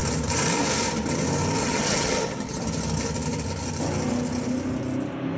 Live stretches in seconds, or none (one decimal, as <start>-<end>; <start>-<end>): 0.0-1.6; 2.6-5.4